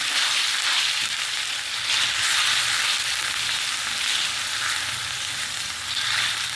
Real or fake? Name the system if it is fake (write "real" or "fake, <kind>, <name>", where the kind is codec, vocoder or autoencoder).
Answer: real